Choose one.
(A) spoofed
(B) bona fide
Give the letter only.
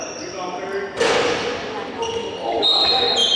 B